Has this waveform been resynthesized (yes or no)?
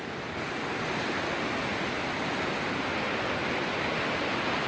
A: no